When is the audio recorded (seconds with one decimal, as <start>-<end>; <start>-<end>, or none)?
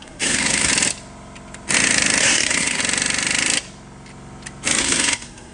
0.7-2.2; 2.8-4.8